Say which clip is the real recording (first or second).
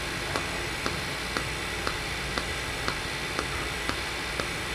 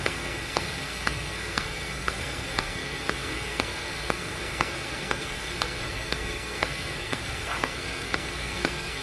first